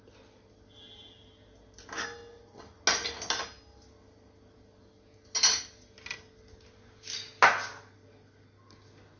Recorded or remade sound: recorded